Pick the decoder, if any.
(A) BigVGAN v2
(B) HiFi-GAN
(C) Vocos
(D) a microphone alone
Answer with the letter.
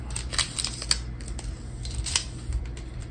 D